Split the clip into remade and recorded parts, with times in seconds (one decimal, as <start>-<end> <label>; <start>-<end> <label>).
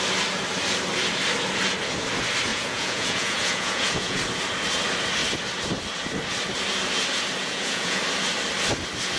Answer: 0.0-2.5 recorded; 2.5-4.2 remade; 4.2-7.4 recorded; 7.4-8.0 remade; 8.0-9.2 recorded